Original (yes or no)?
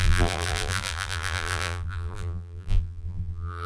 no